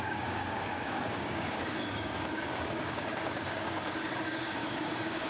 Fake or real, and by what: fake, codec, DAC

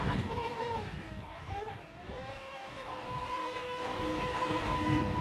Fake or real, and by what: fake, codec, DAC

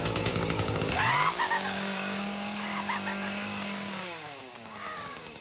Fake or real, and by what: fake, codec, DAC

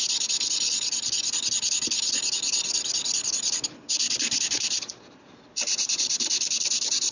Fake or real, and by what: real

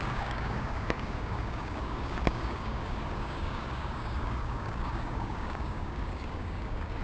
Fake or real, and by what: fake, codec, DAC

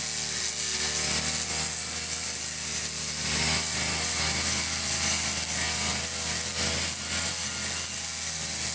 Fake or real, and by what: real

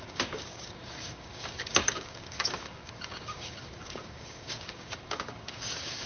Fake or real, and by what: fake, codec, DAC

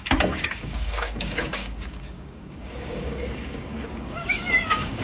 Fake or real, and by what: fake, codec, DAC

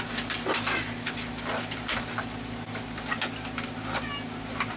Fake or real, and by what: real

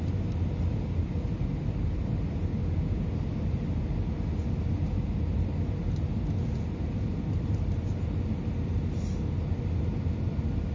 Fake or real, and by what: real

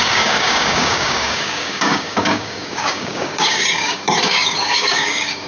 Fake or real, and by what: fake, codec, DAC